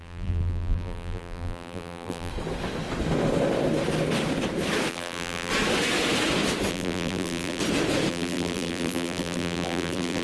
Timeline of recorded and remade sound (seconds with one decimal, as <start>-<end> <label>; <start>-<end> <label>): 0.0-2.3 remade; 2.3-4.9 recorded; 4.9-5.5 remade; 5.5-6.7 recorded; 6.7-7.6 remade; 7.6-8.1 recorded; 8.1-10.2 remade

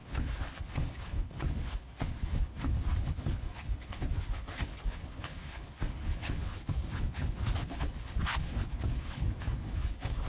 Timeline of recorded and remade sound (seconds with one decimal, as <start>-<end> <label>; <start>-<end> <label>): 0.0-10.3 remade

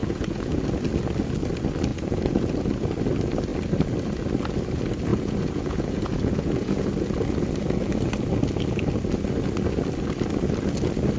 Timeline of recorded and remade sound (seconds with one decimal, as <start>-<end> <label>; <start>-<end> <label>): 0.0-0.6 remade; 0.6-1.9 recorded; 1.9-2.5 remade; 2.5-5.1 recorded; 5.1-6.9 remade; 6.9-11.2 recorded